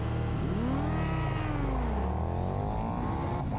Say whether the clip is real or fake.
real